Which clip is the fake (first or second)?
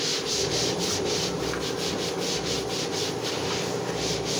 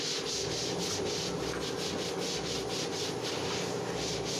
first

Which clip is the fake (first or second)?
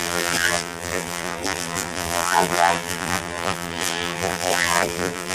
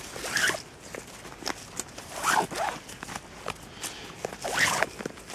first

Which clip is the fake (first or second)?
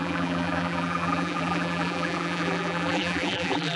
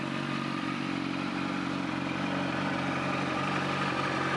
first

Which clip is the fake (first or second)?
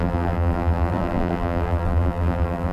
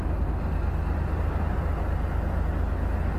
first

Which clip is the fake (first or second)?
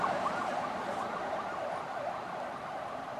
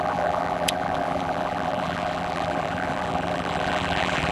second